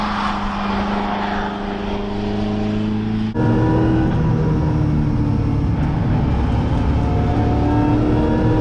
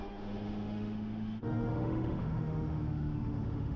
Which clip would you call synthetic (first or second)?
second